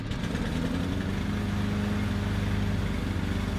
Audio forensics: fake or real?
real